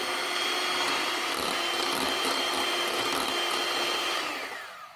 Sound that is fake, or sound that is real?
real